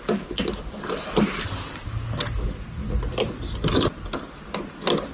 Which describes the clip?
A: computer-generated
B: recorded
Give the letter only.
B